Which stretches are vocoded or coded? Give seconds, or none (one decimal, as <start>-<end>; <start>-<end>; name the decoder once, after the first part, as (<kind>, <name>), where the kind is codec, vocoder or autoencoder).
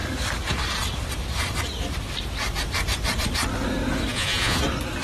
4.1-4.6 (vocoder, Vocos)